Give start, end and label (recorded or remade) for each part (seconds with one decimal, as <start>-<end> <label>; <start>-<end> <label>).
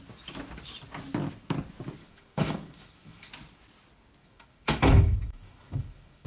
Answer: 0.0-2.0 recorded; 2.0-3.3 remade; 3.3-4.2 recorded; 4.2-6.3 remade